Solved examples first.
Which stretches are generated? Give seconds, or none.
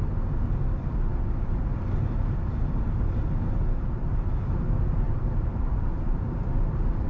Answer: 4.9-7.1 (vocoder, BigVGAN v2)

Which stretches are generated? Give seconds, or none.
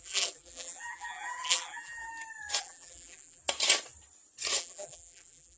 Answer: 0.0-2.1 (vocoder, BigVGAN v2); 2.6-3.4; 4.6-5.6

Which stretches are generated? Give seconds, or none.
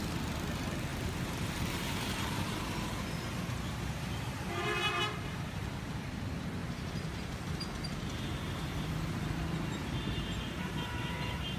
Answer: 0.9-2.6 (vocoder, BigVGAN v2); 6.6-7.3; 9.8-11.6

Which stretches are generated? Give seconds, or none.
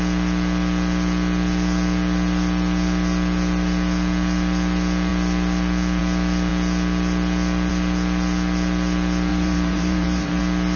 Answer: 9.3-10.4 (vocoder, BigVGAN v2)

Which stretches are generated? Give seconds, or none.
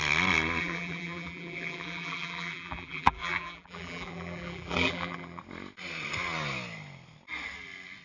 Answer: 0.6-5.4 (vocoder, BigVGAN v2)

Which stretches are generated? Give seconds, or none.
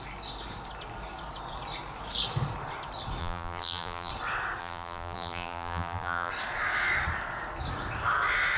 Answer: 3.2-4.1 (vocoder, BigVGAN v2); 4.6-6.3